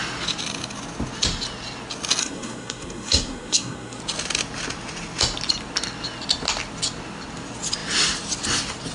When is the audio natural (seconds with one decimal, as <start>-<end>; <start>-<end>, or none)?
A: 0.0-2.2; 4.0-8.9